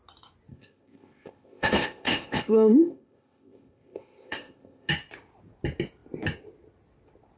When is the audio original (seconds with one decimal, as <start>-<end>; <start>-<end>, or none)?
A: 0.0-0.5; 4.9-7.4